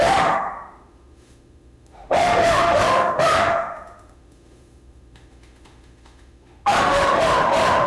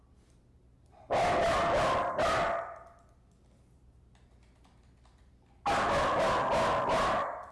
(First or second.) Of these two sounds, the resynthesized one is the first